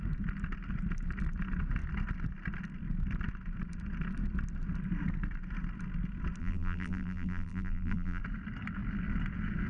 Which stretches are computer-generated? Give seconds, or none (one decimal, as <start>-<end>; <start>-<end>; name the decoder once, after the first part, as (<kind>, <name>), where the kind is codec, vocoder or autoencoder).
6.4-8.2 (vocoder, BigVGAN v2)